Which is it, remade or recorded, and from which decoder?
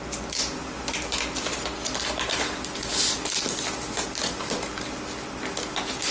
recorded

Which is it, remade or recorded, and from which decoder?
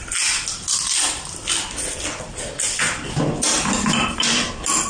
recorded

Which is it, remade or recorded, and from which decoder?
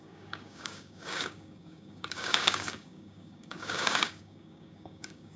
remade, codec, DAC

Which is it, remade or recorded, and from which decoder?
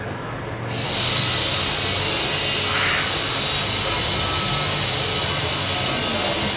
recorded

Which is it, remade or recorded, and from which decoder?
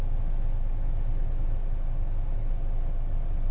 recorded